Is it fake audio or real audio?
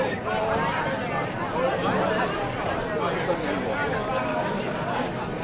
real